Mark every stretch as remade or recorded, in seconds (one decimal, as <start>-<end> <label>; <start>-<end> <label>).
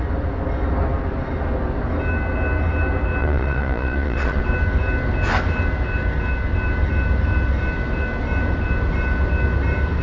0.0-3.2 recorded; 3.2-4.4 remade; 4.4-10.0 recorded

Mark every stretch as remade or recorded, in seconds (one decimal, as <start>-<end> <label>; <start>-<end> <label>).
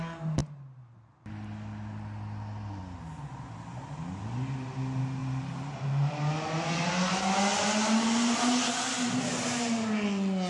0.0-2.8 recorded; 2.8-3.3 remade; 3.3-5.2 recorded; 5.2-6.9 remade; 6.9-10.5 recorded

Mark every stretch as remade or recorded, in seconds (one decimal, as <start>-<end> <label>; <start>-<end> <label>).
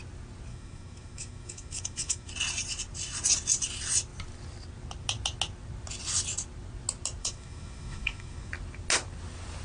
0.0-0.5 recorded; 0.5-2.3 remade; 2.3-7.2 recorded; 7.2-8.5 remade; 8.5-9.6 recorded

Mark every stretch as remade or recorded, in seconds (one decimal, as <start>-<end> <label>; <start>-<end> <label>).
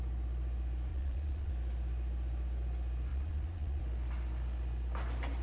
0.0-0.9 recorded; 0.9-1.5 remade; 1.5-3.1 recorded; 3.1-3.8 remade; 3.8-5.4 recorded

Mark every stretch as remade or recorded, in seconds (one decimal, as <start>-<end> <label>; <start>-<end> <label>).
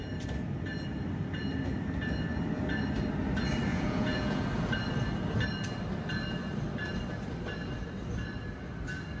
0.0-3.7 recorded; 3.7-4.4 remade; 4.4-9.2 recorded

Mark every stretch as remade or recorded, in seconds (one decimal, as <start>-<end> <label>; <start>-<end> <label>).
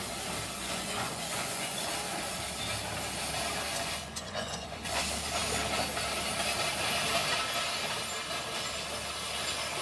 0.0-0.6 recorded; 0.6-1.9 remade; 1.9-3.7 recorded; 3.7-5.0 remade; 5.0-9.8 recorded